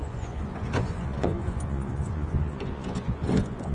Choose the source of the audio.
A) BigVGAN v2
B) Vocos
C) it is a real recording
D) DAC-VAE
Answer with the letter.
B